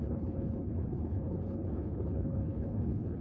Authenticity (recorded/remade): remade